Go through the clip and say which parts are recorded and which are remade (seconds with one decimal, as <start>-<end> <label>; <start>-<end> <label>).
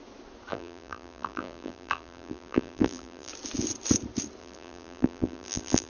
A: 0.0-0.5 recorded; 0.5-3.3 remade; 3.3-4.4 recorded; 4.4-5.9 remade